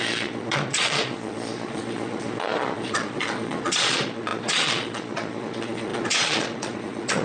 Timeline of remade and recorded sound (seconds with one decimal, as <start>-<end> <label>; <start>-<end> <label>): 0.0-7.2 remade